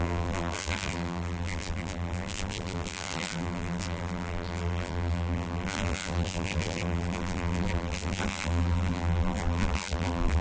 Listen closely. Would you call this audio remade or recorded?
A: remade